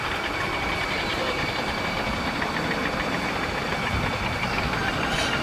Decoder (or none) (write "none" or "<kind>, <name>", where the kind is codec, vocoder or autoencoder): none